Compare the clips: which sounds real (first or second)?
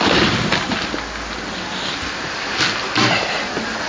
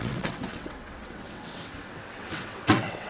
first